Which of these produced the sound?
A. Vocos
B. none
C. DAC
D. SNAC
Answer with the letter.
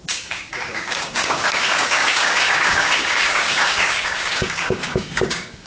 C